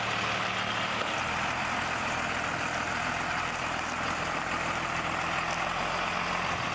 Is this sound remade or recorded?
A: recorded